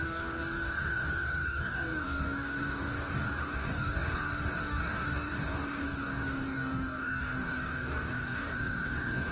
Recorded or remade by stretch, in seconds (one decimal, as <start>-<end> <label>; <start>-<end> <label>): 0.0-9.3 remade